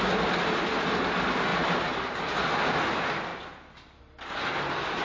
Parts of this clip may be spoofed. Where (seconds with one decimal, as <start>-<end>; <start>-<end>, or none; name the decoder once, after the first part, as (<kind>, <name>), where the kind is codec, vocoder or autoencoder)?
none